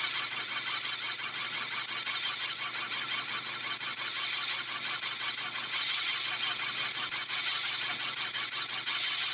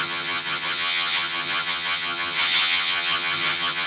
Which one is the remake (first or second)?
second